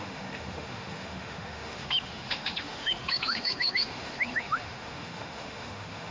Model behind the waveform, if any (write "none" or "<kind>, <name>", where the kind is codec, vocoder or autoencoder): autoencoder, DAC-VAE